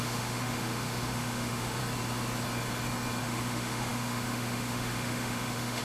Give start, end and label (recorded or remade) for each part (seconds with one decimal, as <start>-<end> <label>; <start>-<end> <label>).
0.0-1.8 remade; 1.8-3.2 recorded; 3.2-5.8 remade